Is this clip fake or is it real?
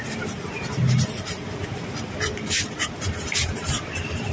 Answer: fake